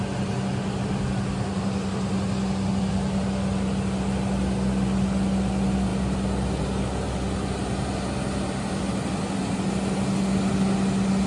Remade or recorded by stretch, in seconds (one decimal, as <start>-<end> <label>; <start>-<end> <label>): 0.0-11.3 recorded